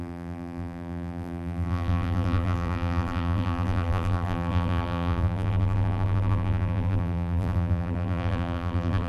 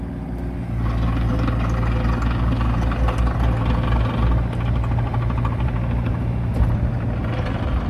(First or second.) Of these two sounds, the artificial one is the first